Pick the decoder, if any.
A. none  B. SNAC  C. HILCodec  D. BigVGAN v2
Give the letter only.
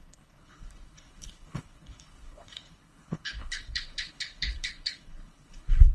C